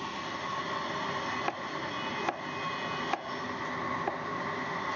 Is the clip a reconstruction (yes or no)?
no